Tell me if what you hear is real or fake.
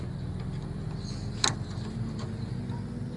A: real